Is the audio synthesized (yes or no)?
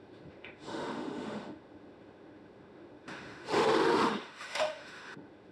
yes